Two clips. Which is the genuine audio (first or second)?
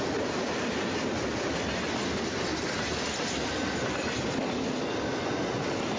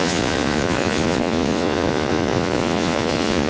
first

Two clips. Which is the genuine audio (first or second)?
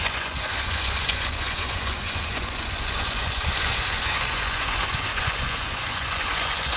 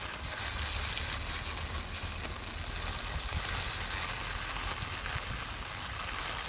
second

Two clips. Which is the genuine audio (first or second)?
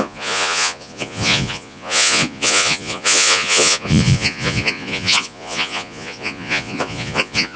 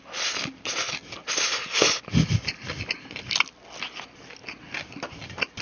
second